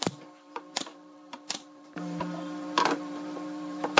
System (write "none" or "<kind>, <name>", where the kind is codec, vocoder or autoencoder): vocoder, BigVGAN v2